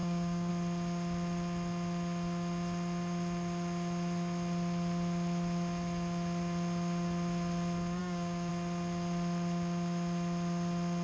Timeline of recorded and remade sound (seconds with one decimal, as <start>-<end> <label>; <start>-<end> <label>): 0.0-0.5 remade; 0.5-8.0 recorded; 8.0-8.5 remade; 8.5-11.0 recorded

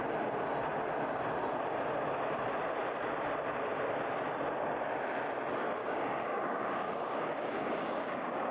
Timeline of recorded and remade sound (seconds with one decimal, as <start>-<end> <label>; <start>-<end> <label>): 0.0-5.8 recorded; 5.8-8.5 remade

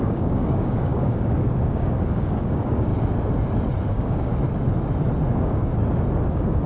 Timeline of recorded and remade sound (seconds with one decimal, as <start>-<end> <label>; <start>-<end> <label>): 0.0-2.9 remade; 2.9-3.9 recorded; 3.9-4.3 remade; 4.3-5.3 recorded; 5.3-5.7 remade; 5.7-6.3 recorded; 6.3-6.7 remade